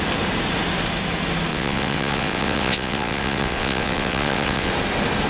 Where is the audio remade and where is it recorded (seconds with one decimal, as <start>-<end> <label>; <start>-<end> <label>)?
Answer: 0.0-1.5 recorded; 1.5-4.7 remade; 4.7-5.3 recorded